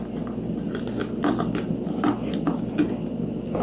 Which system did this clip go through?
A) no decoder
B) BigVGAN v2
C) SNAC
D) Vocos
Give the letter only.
A